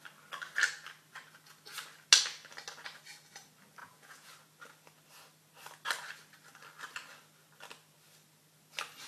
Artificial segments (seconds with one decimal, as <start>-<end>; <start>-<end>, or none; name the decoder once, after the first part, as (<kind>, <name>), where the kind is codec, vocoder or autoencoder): 3.8-4.3 (vocoder, Vocos)